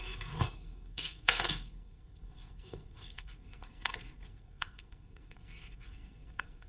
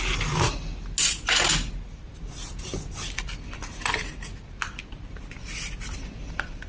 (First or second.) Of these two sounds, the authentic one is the second